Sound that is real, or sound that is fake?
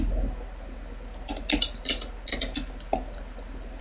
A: real